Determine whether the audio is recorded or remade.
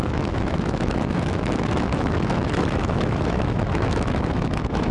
remade